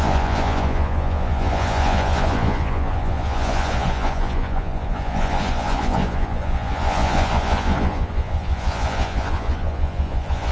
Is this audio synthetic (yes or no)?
yes